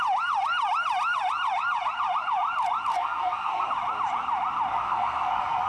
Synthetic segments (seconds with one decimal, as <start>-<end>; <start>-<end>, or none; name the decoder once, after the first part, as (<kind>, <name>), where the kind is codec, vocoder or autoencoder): 2.9-3.7 (codec, SNAC); 4.7-5.7